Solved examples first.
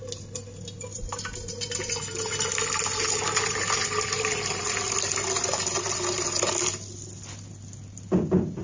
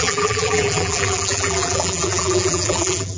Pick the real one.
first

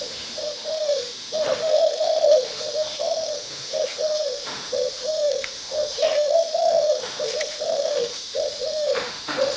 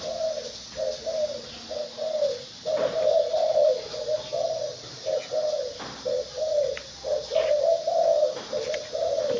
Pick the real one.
second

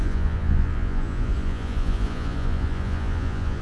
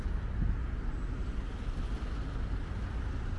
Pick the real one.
second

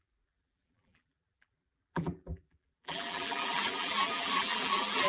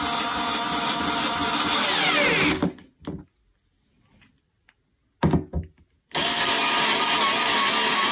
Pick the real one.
second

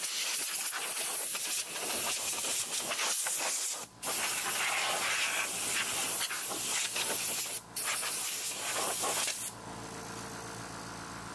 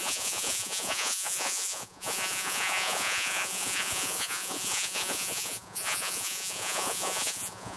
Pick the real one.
first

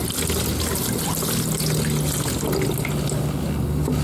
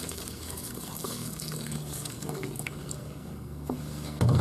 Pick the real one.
first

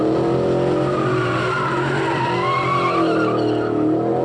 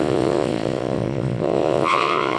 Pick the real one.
first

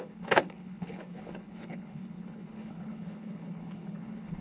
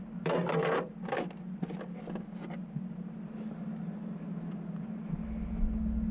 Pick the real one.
second